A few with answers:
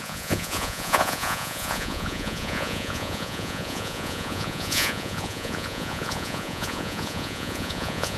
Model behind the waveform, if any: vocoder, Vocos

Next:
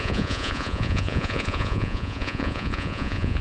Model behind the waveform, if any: vocoder, Vocos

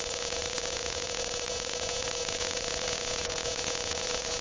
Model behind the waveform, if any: vocoder, Vocos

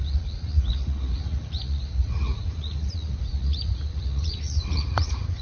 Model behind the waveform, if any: vocoder, Vocos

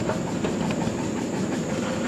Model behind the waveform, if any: none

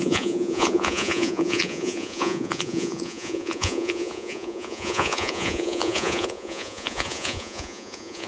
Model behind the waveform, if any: vocoder, Vocos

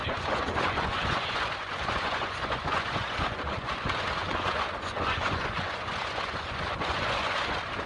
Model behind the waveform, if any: vocoder, Vocos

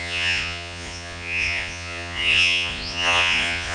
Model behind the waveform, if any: vocoder, Vocos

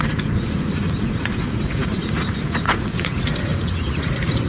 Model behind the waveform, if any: vocoder, Vocos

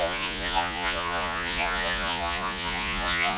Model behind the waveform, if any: vocoder, Vocos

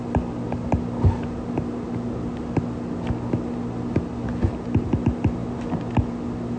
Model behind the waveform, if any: none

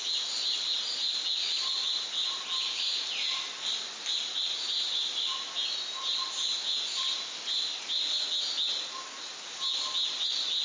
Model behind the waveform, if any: none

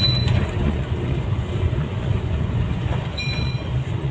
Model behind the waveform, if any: vocoder, Vocos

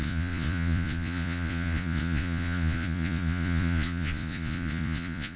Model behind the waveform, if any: vocoder, Vocos